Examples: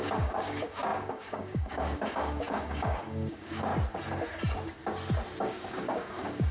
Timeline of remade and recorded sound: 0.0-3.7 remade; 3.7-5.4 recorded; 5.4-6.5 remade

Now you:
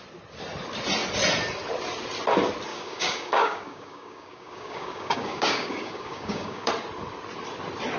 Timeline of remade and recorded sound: 0.0-2.7 recorded; 2.7-6.7 remade; 6.7-8.0 recorded

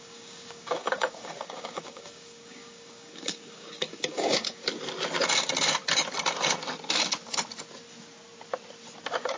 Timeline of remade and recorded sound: 0.0-4.6 remade; 4.6-9.4 recorded

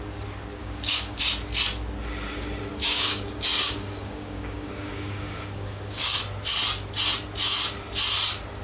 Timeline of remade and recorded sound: 0.0-0.6 recorded; 0.6-1.2 remade; 1.2-2.7 recorded; 2.7-6.2 remade; 6.2-8.6 recorded

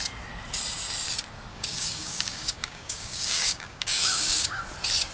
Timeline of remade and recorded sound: 0.0-1.5 recorded; 1.5-4.6 remade; 4.6-5.1 recorded

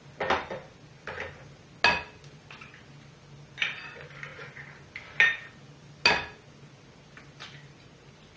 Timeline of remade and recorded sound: 0.0-8.4 recorded

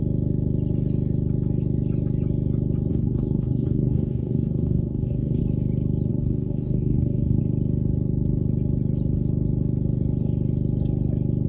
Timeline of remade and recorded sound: 0.0-2.9 recorded; 2.9-5.4 remade; 5.4-6.1 recorded; 6.1-7.4 remade; 7.4-11.5 recorded

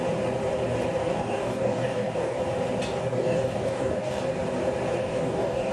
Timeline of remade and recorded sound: 0.0-1.0 recorded; 1.0-2.4 remade; 2.4-3.0 recorded; 3.0-4.2 remade; 4.2-5.0 recorded; 5.0-5.7 remade